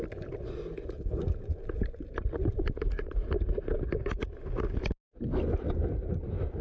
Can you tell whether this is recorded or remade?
recorded